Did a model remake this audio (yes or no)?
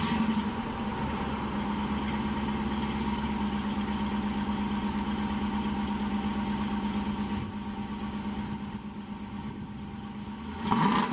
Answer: no